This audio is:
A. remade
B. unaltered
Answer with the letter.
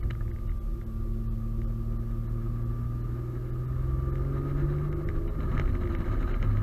B